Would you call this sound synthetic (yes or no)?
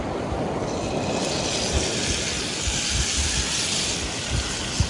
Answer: no